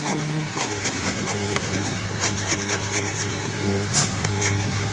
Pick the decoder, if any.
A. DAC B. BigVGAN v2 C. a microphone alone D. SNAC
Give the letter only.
D